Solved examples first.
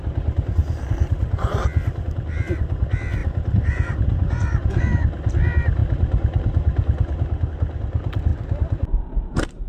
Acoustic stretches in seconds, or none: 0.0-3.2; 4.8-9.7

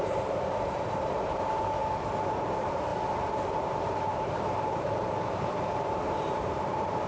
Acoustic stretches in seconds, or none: 1.8-2.3; 2.9-3.4

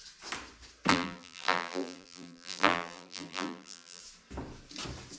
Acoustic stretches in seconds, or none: 0.0-0.9; 4.0-5.2

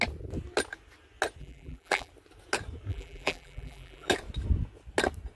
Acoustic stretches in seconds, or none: 0.0-1.4; 2.1-2.9; 4.1-5.4

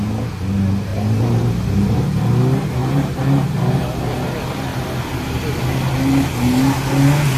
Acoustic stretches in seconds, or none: 0.0-0.9; 2.0-2.8; 3.6-4.7; 5.4-7.4